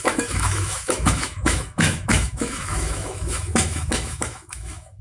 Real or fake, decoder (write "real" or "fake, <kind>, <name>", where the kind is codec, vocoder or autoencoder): fake, autoencoder, DAC-VAE